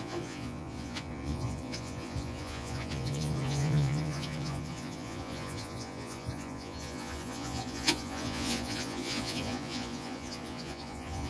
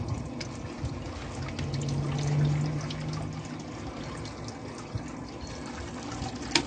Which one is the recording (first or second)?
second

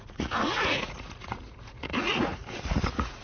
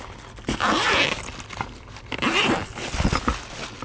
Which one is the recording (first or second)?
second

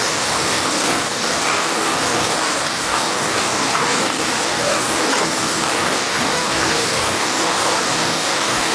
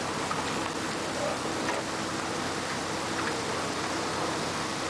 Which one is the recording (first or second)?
second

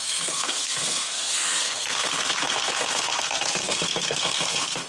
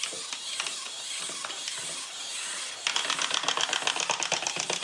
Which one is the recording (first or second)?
second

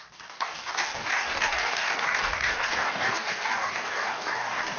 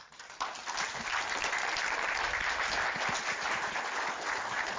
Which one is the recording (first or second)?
second